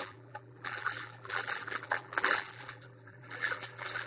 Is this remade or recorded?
remade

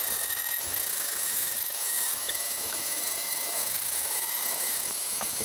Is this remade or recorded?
remade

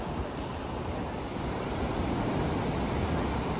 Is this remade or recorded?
recorded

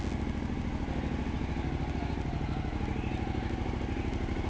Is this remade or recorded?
recorded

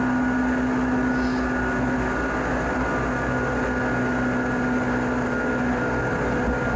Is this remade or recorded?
recorded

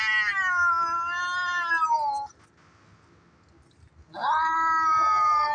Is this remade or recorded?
recorded